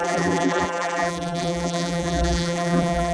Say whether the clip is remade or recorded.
remade